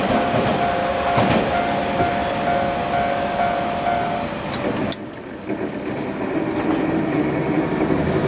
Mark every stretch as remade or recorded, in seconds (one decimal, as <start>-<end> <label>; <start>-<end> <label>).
0.0-8.3 recorded